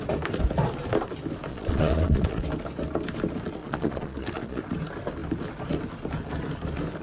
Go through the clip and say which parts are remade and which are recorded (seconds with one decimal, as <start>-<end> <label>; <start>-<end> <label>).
0.0-1.5 recorded; 1.5-2.4 remade; 2.4-3.6 recorded; 3.6-4.6 remade; 4.6-7.0 recorded

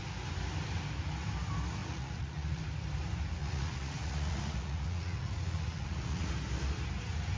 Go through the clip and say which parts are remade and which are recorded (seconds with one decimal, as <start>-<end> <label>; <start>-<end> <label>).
0.0-1.8 recorded; 1.8-2.6 remade; 2.6-3.4 recorded; 3.4-6.3 remade; 6.3-7.4 recorded

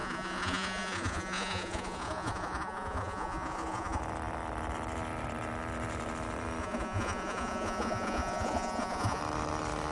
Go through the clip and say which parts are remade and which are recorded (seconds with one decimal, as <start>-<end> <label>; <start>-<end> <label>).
0.0-4.0 remade; 4.0-6.6 recorded; 6.6-9.2 remade; 9.2-9.9 recorded

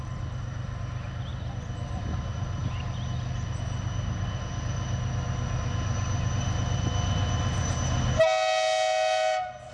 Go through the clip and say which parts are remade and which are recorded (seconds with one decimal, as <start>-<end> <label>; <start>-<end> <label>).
0.0-9.7 recorded

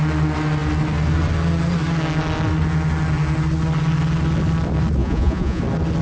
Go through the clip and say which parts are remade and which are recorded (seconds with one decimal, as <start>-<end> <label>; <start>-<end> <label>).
0.0-5.0 recorded; 5.0-5.6 remade; 5.6-6.0 recorded

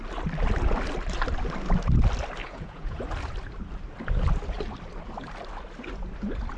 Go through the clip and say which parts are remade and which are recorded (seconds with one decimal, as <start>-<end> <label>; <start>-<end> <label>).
0.0-2.4 recorded; 2.4-3.0 remade; 3.0-6.6 recorded

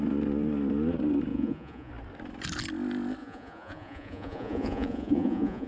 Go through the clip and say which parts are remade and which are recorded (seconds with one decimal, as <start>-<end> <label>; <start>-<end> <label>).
0.0-1.3 recorded; 1.3-1.9 remade; 1.9-3.2 recorded; 3.2-5.7 remade